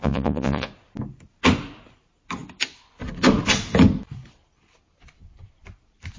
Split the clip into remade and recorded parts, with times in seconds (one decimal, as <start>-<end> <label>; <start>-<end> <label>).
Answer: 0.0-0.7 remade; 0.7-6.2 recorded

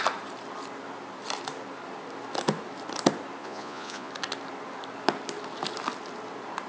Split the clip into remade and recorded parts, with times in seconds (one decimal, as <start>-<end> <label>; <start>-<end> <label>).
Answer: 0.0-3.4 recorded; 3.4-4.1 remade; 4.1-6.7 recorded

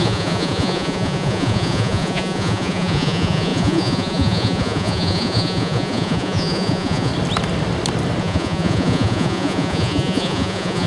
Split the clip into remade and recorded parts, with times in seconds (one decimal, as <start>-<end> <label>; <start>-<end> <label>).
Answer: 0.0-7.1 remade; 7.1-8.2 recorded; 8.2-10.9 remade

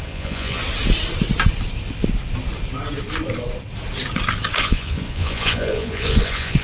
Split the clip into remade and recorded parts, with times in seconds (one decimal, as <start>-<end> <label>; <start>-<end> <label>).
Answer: 0.0-0.6 remade; 0.6-4.6 recorded; 4.6-6.6 remade

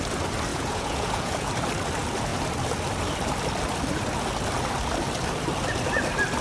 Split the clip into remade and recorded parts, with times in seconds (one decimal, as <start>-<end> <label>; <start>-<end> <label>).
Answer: 0.0-0.5 recorded; 0.5-1.5 remade; 1.5-6.4 recorded

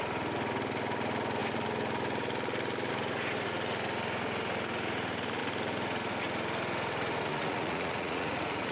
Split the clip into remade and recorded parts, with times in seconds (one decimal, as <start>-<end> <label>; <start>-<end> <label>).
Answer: 0.0-7.3 recorded; 7.3-8.7 remade

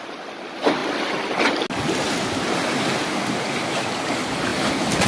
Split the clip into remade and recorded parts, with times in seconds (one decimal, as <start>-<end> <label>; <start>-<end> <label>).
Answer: 0.0-5.1 recorded

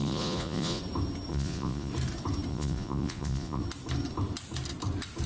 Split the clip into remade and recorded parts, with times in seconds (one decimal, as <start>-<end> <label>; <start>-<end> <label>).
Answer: 0.0-0.8 remade; 0.8-1.3 recorded; 1.3-1.9 remade; 1.9-2.5 recorded; 2.5-3.6 remade; 3.6-5.3 recorded